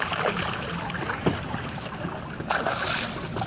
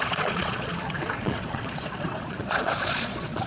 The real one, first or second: first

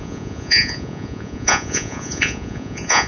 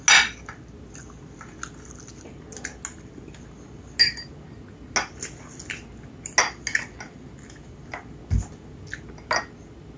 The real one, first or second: second